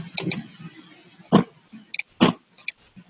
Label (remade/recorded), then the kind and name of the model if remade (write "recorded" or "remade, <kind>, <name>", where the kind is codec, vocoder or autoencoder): recorded